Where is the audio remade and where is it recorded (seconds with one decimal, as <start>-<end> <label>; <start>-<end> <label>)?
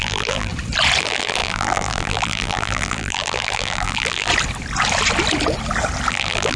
0.0-0.5 remade; 0.5-1.0 recorded; 1.0-4.3 remade; 4.3-6.1 recorded; 6.1-6.6 remade